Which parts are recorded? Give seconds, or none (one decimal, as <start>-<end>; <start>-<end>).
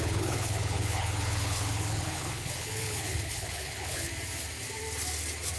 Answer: 4.1-5.6